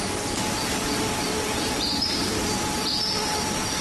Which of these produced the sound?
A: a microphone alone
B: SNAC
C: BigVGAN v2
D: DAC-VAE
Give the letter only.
A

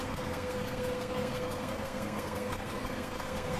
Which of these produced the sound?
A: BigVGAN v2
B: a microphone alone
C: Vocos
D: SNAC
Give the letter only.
D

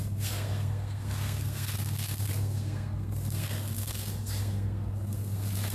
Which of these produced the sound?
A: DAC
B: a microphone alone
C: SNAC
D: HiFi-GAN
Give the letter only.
C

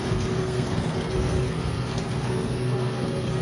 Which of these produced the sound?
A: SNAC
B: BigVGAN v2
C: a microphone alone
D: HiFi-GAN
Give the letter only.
A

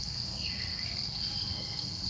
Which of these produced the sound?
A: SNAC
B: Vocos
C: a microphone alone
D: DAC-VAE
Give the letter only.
A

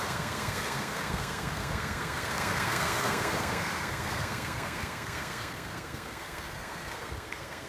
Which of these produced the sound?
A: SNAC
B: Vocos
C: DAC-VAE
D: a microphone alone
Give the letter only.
A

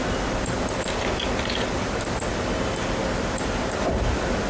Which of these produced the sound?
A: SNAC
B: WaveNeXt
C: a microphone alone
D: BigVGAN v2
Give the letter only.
C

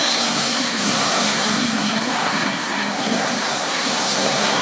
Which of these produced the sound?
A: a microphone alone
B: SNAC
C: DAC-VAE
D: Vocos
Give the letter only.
B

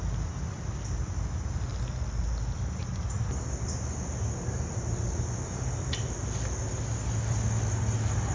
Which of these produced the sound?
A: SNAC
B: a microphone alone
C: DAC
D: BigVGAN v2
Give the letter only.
B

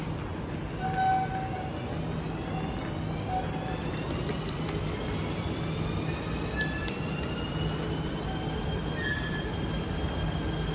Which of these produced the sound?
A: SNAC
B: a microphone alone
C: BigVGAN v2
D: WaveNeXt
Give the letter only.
B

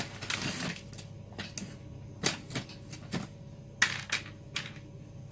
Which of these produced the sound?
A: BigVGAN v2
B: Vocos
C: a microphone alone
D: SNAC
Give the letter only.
C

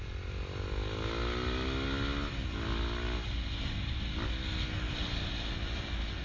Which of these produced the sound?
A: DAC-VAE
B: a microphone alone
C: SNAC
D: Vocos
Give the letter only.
B